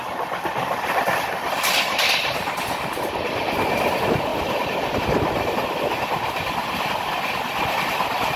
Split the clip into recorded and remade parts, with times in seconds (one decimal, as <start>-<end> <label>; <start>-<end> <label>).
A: 0.0-4.3 recorded; 4.3-5.0 remade; 5.0-8.4 recorded